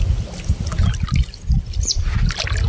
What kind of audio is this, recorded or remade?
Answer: recorded